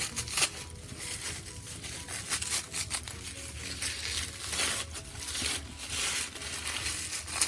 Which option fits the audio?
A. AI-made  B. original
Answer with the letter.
B